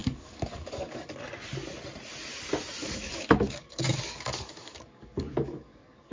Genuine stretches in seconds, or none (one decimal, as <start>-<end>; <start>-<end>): 1.2-2.8